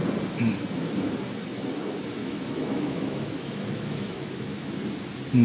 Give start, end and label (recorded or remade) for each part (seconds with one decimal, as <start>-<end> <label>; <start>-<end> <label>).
0.0-2.2 recorded; 2.2-4.7 remade; 4.7-5.4 recorded